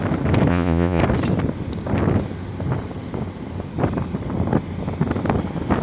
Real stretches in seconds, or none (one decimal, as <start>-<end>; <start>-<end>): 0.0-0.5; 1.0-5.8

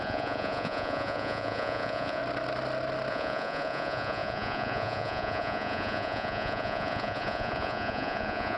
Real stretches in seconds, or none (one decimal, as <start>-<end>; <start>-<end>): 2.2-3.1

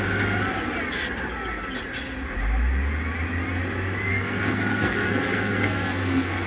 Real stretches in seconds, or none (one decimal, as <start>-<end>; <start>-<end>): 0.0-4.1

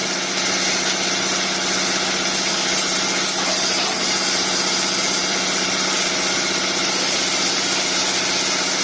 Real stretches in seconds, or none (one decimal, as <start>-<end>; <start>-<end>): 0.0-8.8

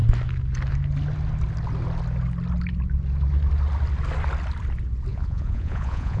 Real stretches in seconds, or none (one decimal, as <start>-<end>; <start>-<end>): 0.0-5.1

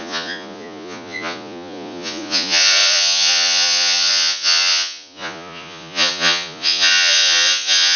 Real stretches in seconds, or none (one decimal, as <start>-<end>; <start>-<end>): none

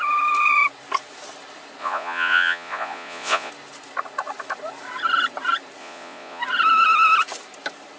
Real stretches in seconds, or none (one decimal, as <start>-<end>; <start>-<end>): 0.0-1.8; 3.5-5.8; 6.4-8.0